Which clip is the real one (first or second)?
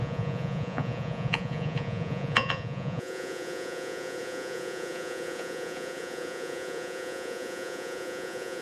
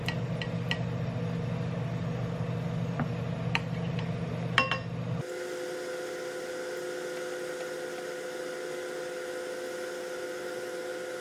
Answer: second